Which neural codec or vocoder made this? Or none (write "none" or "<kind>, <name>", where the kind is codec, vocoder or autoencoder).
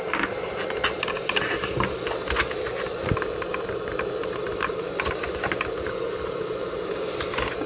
none